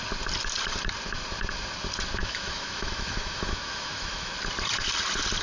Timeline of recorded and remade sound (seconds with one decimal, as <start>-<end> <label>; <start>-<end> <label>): 0.0-2.2 recorded; 2.2-4.3 remade; 4.3-5.4 recorded